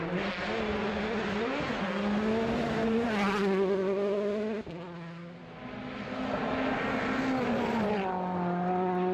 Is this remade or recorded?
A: recorded